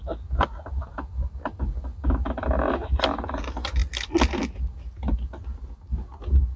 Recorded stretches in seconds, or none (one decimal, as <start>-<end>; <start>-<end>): 0.0-6.6